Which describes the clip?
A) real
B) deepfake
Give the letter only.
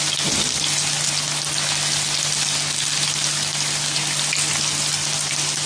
A